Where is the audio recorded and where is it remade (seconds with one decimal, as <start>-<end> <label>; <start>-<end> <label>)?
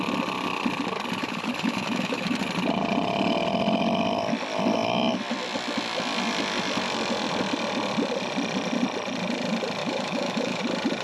0.0-1.2 recorded; 1.2-2.4 remade; 2.4-9.8 recorded; 9.8-10.6 remade; 10.6-11.0 recorded